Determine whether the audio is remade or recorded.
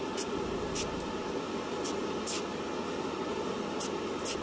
recorded